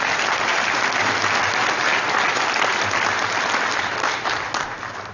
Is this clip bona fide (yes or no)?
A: yes